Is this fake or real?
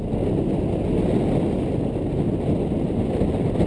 real